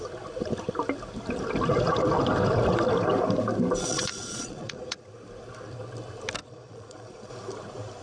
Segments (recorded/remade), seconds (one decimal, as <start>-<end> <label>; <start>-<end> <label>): 0.0-3.8 recorded; 3.8-5.0 remade; 5.0-6.4 recorded; 6.4-7.3 remade; 7.3-8.0 recorded